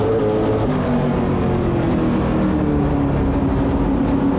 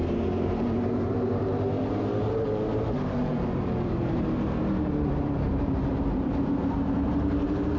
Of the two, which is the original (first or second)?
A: first